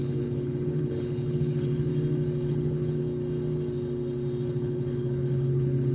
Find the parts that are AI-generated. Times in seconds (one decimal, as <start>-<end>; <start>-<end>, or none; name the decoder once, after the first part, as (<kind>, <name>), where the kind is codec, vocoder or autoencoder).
0.0-1.9 (codec, HILCodec); 2.5-3.0; 4.5-5.9